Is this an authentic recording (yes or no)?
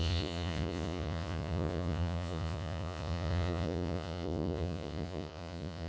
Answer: no